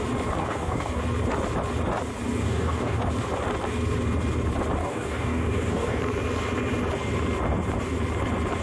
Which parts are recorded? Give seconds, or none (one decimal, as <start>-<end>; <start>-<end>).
0.0-0.4; 1.0-2.4; 3.0-4.8; 6.0-8.6